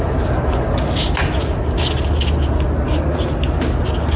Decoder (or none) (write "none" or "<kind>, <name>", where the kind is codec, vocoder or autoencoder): none